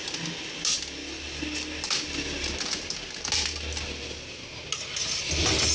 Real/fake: real